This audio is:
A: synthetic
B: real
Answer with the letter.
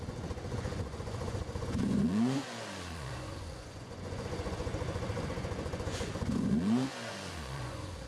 A